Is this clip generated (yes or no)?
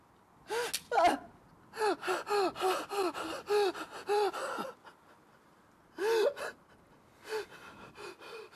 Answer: no